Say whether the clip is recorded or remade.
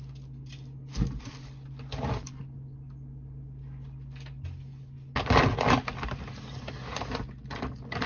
recorded